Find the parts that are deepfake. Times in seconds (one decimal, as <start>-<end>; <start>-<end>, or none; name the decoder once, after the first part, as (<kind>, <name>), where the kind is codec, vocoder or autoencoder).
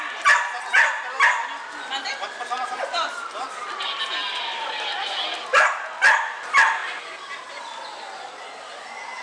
none